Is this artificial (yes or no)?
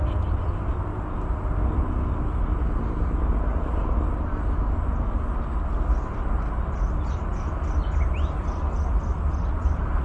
no